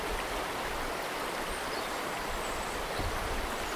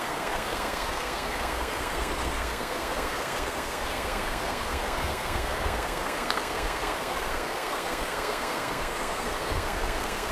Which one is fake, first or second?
second